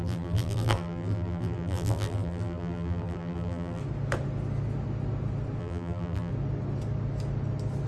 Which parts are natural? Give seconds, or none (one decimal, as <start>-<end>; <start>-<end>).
3.8-5.6; 6.3-7.9